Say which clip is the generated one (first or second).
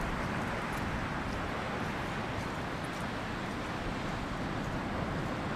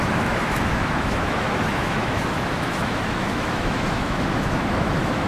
second